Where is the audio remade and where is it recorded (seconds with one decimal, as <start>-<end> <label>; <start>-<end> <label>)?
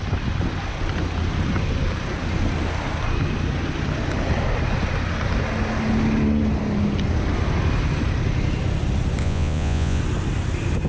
0.0-9.2 recorded; 9.2-10.0 remade; 10.0-10.9 recorded